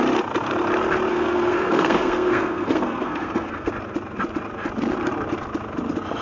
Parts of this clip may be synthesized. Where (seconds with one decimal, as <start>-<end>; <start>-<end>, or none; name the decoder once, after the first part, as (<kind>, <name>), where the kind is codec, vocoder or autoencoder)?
1.1-3.7 (codec, SNAC)